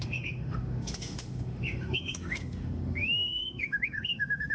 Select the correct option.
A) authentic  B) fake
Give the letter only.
B